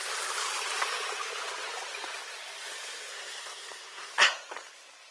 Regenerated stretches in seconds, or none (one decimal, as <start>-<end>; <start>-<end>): 3.1-4.1